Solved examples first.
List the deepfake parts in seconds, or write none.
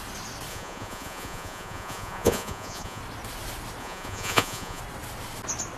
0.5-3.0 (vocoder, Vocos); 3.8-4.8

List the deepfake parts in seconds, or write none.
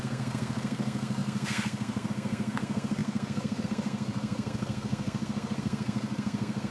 0.0-6.7 (codec, SNAC)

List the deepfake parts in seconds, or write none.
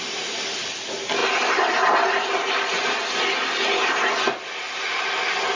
none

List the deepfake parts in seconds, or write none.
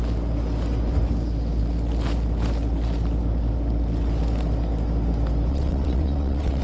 5.5-6.6 (vocoder, WaveNeXt)